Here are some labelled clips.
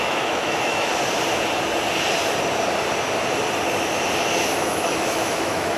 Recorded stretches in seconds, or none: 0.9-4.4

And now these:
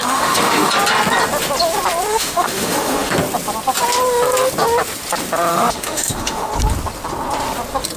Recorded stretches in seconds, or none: 0.7-2.1; 3.1-5.5; 6.5-8.0

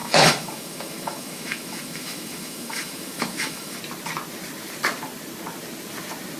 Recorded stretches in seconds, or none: 3.8-6.4

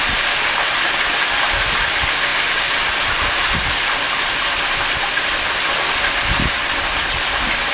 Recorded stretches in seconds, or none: 0.0-7.7

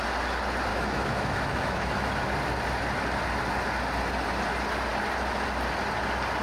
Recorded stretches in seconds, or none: 0.0-0.7; 2.1-6.4

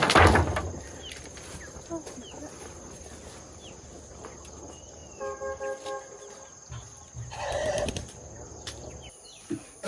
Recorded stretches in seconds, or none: 0.0-9.9